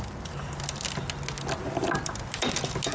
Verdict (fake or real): real